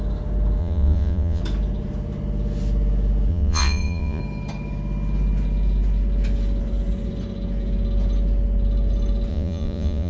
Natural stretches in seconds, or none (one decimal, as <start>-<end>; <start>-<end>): 0.0-0.6; 1.4-3.3; 4.2-9.3